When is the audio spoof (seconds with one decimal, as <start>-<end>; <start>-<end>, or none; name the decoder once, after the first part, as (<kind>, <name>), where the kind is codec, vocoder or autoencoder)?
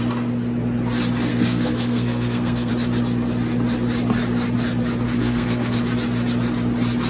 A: 1.3-2.7 (codec, SNAC); 5.2-5.8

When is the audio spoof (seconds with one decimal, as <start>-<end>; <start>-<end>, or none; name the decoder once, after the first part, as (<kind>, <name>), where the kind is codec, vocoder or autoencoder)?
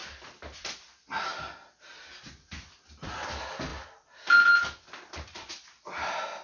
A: none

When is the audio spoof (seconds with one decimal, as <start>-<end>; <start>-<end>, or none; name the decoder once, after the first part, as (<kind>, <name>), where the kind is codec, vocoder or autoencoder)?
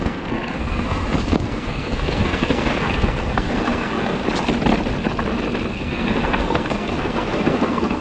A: 0.0-4.2 (codec, SNAC); 5.7-8.0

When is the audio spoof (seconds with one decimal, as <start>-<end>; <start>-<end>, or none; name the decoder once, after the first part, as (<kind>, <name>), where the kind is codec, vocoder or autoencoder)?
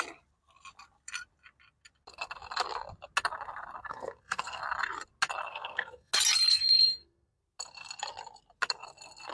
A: 3.8-4.6 (codec, SNAC); 5.5-6.1; 6.5-7.4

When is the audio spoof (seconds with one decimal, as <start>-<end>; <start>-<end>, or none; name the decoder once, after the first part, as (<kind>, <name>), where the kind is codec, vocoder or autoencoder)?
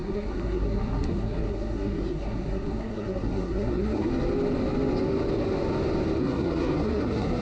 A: 0.0-4.1 (codec, SNAC); 6.2-7.4